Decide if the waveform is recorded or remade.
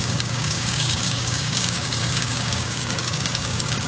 remade